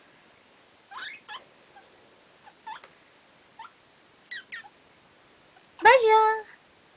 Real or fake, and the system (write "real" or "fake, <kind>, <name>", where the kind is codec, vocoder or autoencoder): real